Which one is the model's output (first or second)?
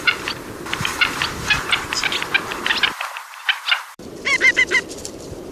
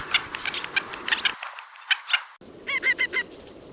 first